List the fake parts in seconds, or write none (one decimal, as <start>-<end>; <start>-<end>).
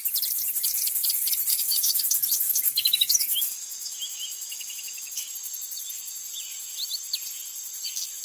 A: 1.5-5.3